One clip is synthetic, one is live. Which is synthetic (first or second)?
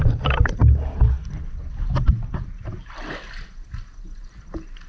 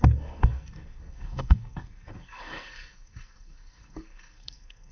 second